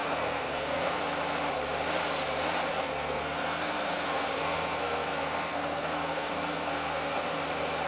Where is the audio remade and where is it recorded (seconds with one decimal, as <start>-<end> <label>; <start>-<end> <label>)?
0.0-1.0 remade; 1.0-2.7 recorded; 2.7-7.4 remade; 7.4-7.9 recorded